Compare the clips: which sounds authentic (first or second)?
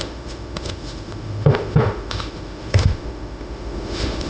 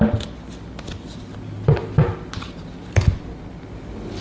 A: second